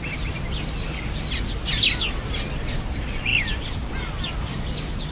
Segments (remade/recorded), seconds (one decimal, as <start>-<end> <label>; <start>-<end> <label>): 0.0-5.1 recorded